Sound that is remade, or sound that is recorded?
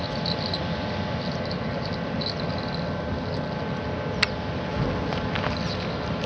recorded